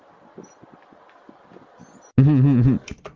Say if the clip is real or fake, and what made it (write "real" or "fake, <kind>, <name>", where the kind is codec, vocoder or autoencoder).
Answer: real